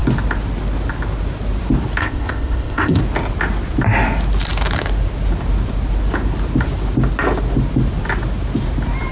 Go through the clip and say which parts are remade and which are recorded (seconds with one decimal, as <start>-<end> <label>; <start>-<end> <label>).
0.0-2.0 recorded; 2.0-3.0 remade; 3.0-9.1 recorded